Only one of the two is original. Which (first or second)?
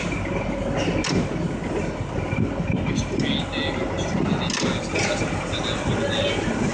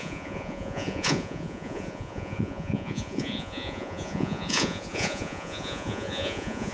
first